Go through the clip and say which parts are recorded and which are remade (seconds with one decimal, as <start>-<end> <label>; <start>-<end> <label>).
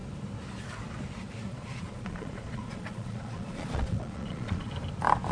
0.0-1.5 recorded; 1.5-4.7 remade; 4.7-5.3 recorded